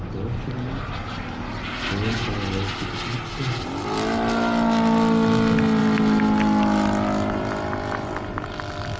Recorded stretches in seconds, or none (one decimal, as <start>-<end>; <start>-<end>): 0.0-9.0